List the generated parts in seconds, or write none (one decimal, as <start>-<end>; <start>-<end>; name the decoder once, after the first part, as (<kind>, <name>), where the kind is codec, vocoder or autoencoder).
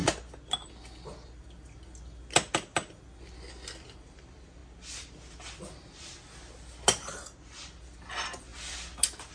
none